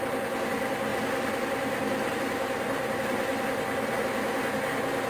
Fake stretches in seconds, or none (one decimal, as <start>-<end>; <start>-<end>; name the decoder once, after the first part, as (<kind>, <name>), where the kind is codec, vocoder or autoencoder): 0.9-4.0 (vocoder, BigVGAN v2)